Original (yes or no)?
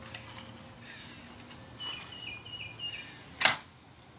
yes